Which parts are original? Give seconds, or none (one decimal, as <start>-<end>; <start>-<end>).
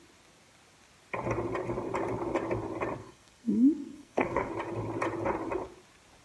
0.0-3.0; 4.5-6.2